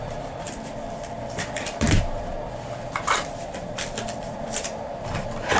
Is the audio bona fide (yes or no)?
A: no